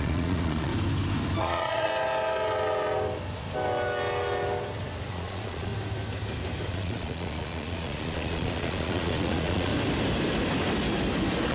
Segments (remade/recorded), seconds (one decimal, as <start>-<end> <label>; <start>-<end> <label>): 0.0-0.7 remade; 0.7-1.4 recorded; 1.4-1.9 remade; 1.9-5.1 recorded; 5.1-5.7 remade; 5.7-6.7 recorded; 6.7-9.7 remade; 9.7-11.5 recorded